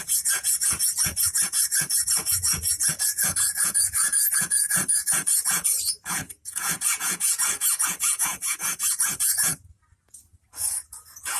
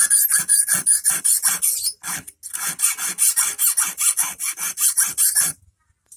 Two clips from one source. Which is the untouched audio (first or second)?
second